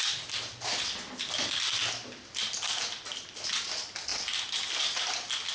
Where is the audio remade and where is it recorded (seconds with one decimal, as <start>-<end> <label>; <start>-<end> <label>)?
0.0-5.5 recorded